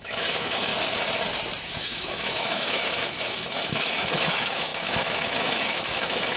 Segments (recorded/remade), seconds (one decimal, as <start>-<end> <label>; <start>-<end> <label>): 0.0-0.7 remade; 0.7-1.8 recorded; 1.8-6.4 remade